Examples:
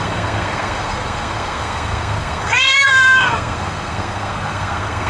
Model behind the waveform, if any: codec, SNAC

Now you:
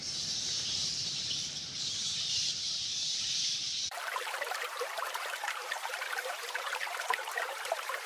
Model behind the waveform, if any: vocoder, BigVGAN v2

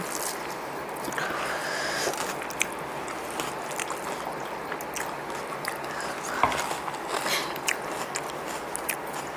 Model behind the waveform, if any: none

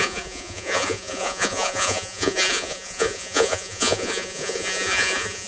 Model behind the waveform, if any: vocoder, Vocos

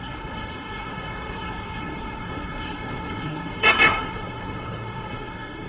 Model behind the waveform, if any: codec, SNAC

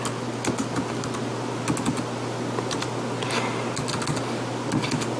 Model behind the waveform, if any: none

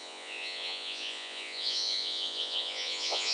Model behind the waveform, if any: vocoder, Vocos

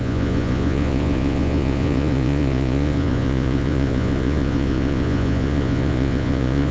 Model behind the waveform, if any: vocoder, Vocos